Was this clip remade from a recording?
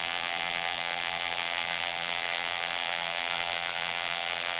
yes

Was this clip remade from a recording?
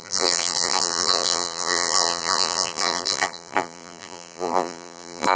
yes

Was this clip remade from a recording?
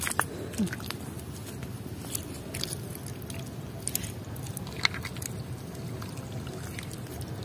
no